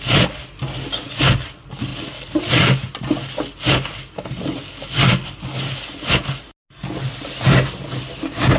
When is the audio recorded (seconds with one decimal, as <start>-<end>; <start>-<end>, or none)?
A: 0.0-8.6